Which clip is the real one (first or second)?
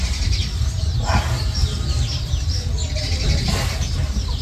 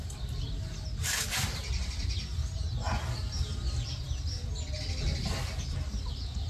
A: second